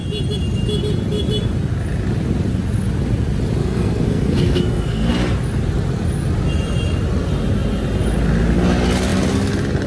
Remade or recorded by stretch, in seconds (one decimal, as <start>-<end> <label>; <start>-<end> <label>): 0.0-3.6 recorded; 3.6-5.1 remade; 5.1-9.9 recorded